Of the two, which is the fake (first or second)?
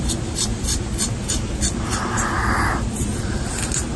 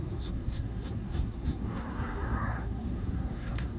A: second